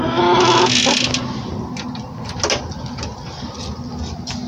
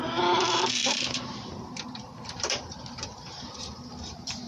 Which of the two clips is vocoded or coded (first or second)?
second